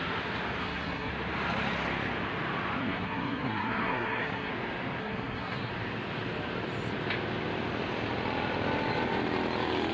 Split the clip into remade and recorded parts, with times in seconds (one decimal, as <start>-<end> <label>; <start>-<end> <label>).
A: 0.0-0.6 recorded; 0.6-1.1 remade; 1.1-2.8 recorded; 2.8-4.5 remade; 4.5-5.0 recorded; 5.0-5.7 remade; 5.7-9.9 recorded